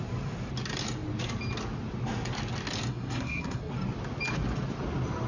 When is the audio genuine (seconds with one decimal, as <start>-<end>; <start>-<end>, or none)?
0.0-2.9; 3.7-5.3